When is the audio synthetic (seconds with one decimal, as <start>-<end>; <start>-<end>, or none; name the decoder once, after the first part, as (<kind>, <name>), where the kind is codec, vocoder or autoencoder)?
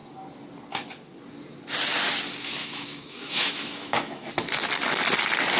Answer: 2.6-4.3 (autoencoder, DAC-VAE)